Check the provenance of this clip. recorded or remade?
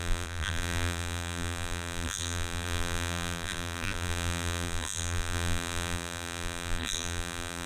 remade